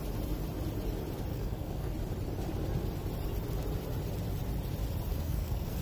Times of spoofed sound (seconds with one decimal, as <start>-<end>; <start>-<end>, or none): 1.3-1.9; 5.1-5.8